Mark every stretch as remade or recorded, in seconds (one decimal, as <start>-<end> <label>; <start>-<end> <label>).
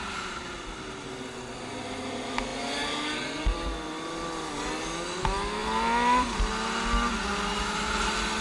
0.0-2.5 recorded; 2.5-4.5 remade; 4.5-5.6 recorded; 5.6-6.5 remade; 6.5-7.3 recorded; 7.3-8.4 remade